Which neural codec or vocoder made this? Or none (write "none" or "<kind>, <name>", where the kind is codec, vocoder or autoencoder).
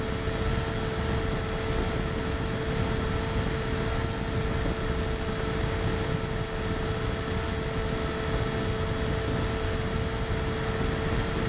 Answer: none